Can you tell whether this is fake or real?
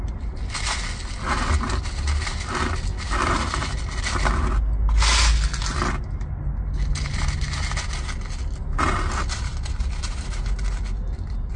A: real